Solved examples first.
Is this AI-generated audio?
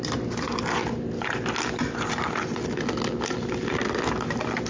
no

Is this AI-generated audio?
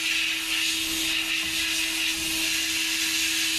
no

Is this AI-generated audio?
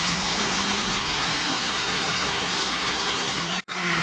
yes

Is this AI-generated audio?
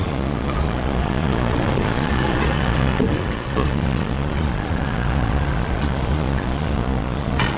yes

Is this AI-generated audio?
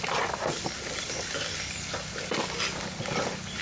no